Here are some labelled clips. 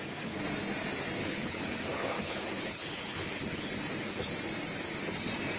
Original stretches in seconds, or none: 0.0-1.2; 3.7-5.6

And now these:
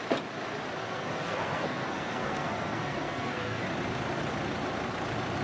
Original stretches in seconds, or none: 0.0-0.8; 3.6-5.4

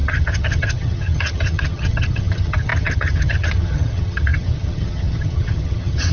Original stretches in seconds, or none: none

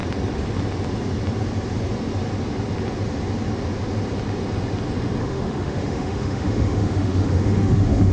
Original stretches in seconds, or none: 0.0-5.2

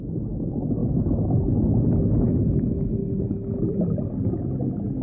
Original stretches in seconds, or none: 0.0-0.8; 3.8-5.0

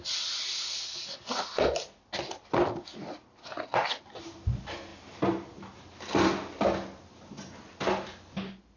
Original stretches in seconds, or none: 0.0-8.8

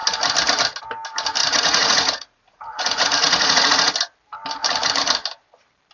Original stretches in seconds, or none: 0.0-1.4; 3.9-5.9

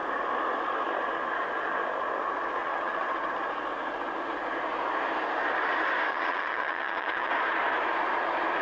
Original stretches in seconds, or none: 0.0-2.6; 3.3-6.1; 7.3-8.6